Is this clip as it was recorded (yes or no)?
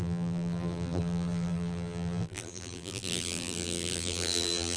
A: no